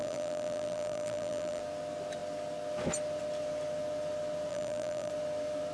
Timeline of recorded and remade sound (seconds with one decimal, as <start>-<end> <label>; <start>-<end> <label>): 0.0-1.6 remade; 1.6-4.5 recorded; 4.5-5.1 remade; 5.1-5.7 recorded